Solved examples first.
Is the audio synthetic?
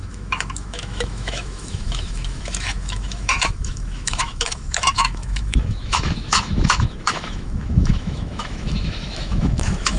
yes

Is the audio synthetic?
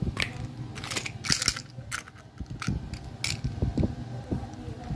no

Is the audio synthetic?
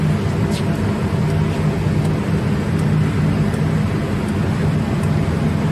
no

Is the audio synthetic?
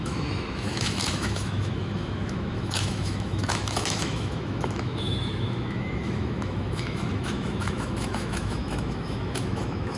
yes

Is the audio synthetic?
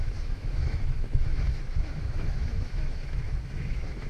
yes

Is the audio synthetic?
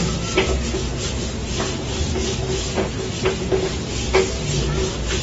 no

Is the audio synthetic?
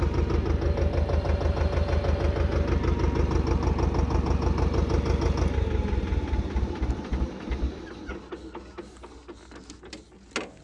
no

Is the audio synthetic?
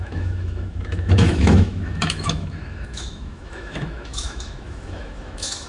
yes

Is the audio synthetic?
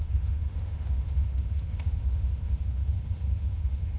yes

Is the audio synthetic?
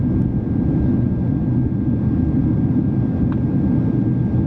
no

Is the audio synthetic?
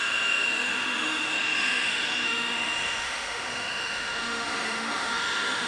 yes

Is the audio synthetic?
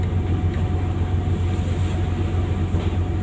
no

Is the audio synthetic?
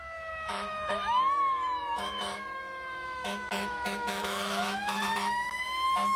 yes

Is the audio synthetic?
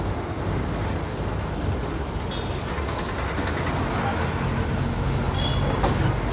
no